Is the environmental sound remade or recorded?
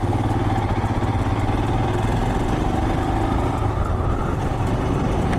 recorded